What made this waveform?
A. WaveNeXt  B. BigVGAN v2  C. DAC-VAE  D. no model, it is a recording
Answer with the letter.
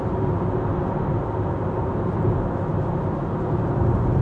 D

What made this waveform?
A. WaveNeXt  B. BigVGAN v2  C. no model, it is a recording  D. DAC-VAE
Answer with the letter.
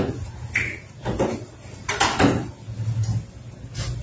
C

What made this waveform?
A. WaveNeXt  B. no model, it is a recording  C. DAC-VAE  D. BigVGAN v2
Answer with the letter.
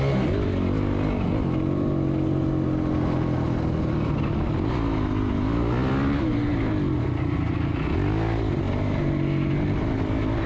B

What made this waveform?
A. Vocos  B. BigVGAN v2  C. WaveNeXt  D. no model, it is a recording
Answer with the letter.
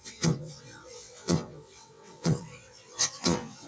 C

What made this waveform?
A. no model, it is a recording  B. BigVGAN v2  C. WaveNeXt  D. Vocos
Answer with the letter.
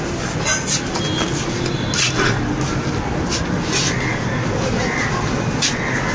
A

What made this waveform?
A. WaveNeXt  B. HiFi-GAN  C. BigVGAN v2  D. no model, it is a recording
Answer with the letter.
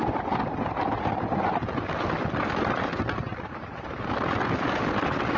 D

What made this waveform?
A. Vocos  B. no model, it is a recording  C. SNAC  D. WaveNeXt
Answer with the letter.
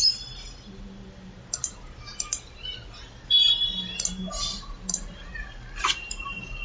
B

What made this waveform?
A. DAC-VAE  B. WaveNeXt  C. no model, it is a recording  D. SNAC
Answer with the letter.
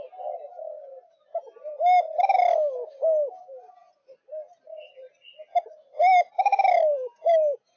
C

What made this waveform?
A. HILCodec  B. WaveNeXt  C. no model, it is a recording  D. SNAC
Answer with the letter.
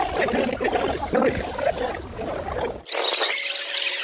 C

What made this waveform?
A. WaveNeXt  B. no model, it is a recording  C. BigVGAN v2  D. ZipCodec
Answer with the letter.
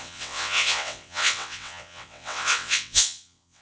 A